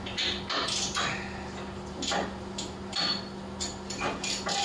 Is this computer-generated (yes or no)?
no